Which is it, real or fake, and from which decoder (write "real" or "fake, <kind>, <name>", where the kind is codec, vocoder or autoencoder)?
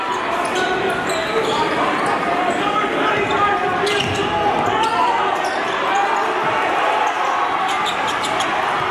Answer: real